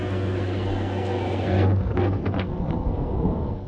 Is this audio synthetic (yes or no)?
yes